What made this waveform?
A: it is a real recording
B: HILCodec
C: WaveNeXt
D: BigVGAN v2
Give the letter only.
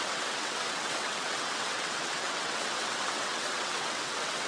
C